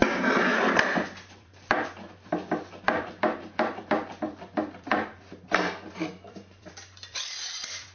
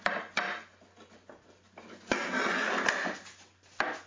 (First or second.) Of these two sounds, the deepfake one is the first